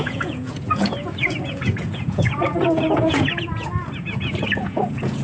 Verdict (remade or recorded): remade